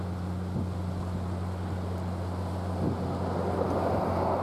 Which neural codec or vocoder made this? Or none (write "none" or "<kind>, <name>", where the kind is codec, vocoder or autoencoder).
none